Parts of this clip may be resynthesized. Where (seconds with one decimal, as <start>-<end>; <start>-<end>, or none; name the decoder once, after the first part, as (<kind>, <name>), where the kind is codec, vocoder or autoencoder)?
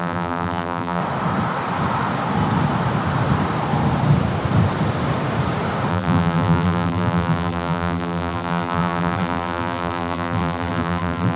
0.0-1.0 (vocoder, BigVGAN v2); 5.9-11.4